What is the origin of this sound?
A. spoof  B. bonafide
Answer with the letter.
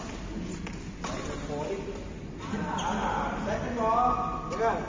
B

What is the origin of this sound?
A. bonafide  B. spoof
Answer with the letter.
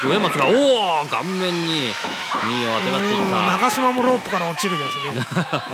B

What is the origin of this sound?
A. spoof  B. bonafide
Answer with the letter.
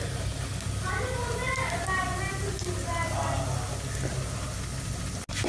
B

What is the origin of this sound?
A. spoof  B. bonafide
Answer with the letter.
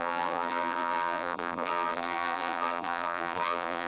A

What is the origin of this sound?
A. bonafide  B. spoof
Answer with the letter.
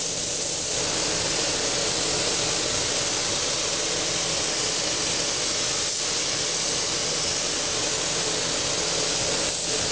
A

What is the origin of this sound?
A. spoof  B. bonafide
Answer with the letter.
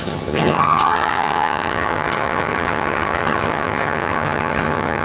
A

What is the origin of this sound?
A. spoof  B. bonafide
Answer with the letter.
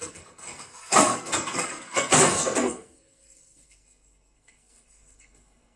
A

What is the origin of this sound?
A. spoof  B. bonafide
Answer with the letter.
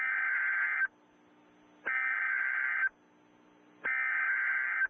B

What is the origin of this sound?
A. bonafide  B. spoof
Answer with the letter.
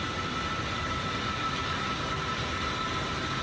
A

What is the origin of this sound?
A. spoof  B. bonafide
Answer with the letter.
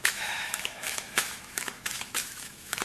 A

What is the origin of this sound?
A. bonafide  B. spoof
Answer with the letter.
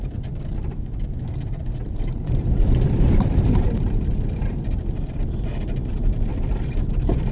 B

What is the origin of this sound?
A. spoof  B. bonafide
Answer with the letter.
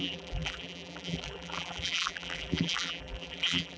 A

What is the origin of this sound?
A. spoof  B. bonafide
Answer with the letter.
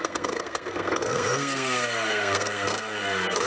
A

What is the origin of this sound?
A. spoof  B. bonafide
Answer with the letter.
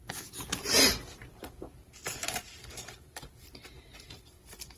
B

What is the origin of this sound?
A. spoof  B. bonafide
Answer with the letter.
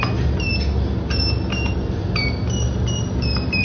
B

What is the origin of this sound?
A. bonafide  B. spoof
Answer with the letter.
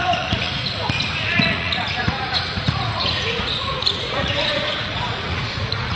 B